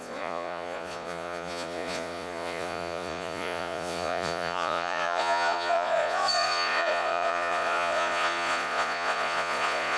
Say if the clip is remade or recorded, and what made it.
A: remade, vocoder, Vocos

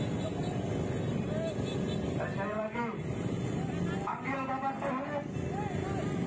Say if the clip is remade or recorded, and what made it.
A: recorded